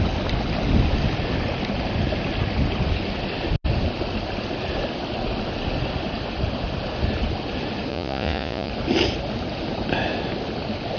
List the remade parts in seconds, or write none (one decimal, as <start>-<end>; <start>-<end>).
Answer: 7.9-8.7